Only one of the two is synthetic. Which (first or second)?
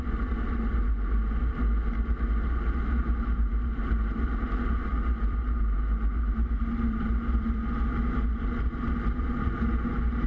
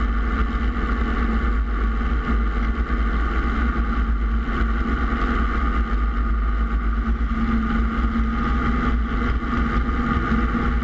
first